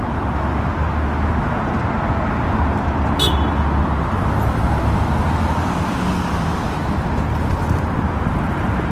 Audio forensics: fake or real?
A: real